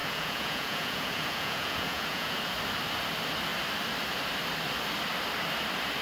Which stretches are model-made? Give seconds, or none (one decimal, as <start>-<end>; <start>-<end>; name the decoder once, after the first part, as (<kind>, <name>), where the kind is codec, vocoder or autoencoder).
0.0-2.4 (vocoder, Vocos)